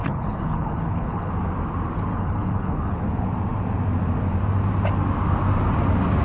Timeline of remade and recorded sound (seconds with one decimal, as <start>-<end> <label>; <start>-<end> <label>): 0.0-1.3 remade; 1.3-2.1 recorded; 2.1-3.0 remade; 3.0-6.2 recorded